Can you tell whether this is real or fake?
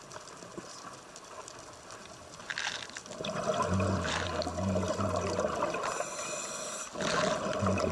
real